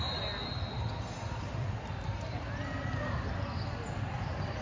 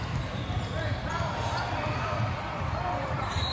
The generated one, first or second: second